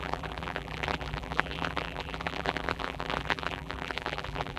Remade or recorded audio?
remade